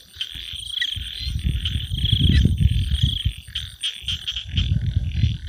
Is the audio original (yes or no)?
yes